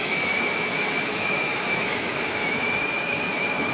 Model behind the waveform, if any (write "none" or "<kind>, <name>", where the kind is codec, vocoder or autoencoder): autoencoder, DAC-VAE